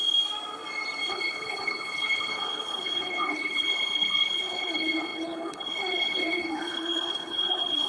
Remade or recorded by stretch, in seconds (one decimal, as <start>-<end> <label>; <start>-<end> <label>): 0.0-1.1 recorded; 1.1-7.9 remade